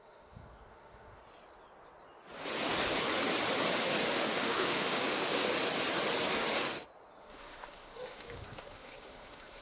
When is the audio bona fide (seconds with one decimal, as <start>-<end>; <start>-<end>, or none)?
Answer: 1.2-4.1; 5.4-7.2